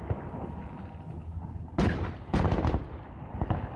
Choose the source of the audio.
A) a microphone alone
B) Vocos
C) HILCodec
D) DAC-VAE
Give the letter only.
A